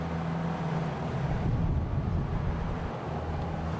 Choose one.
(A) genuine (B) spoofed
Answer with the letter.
A